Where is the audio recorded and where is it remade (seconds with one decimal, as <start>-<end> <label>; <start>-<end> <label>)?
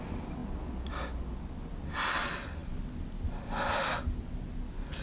0.0-5.0 recorded